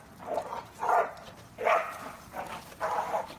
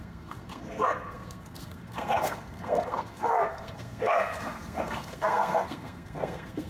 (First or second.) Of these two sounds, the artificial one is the second